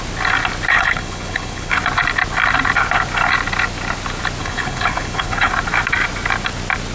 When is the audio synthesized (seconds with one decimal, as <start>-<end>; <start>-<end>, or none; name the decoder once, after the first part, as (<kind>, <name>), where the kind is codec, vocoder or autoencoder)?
0.7-1.8 (codec, HILCodec); 4.4-5.5